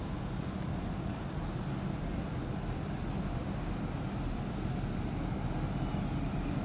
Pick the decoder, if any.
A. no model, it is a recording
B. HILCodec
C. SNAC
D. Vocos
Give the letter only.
A